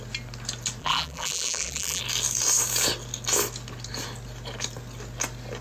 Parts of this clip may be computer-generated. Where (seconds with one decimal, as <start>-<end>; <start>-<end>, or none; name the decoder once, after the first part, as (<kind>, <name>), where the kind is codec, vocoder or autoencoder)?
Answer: 0.8-2.0 (vocoder, BigVGAN v2)

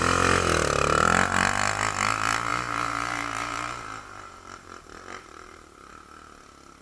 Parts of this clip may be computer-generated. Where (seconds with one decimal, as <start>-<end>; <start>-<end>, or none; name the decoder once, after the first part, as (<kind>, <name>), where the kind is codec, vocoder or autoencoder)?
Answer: 2.5-5.9 (vocoder, BigVGAN v2)

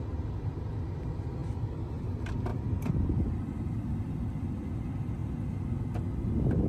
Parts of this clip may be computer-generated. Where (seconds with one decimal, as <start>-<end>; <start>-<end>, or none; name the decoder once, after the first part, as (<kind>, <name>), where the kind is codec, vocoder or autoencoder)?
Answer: 1.4-1.9 (vocoder, BigVGAN v2); 2.5-4.3